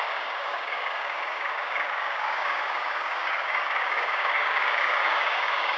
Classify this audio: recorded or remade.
remade